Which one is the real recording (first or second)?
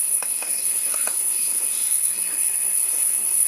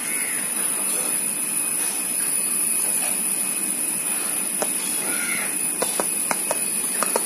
second